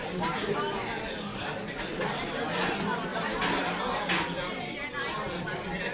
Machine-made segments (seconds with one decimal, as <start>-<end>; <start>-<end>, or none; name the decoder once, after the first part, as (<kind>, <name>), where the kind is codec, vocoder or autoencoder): 1.3-1.8 (codec, DAC)